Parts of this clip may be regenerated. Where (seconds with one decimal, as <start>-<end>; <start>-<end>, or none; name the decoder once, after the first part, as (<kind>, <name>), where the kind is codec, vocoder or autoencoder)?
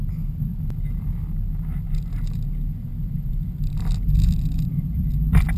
2.9-5.6 (vocoder, BigVGAN v2)